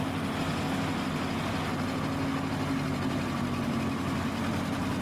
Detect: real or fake real